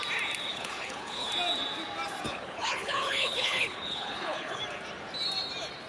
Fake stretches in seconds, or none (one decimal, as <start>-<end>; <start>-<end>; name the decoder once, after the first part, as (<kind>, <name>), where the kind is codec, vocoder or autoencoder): 0.5-1.3 (codec, HILCodec); 2.3-4.6